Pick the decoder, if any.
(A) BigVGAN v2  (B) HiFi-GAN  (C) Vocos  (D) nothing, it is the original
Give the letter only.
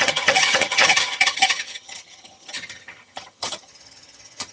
B